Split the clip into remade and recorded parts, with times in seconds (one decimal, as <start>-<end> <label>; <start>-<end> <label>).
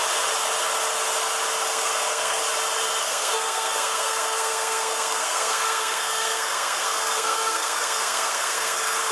0.0-1.7 recorded; 1.7-2.4 remade; 2.4-3.0 recorded; 3.0-9.1 remade